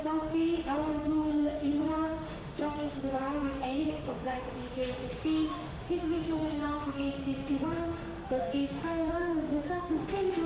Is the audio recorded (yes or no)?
no